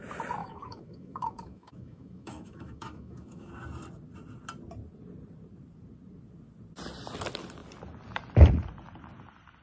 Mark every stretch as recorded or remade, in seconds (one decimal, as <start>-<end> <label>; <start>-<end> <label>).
0.0-0.4 recorded; 0.4-3.5 remade; 3.5-9.6 recorded